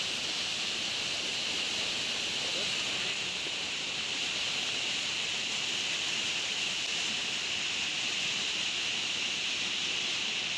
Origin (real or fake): real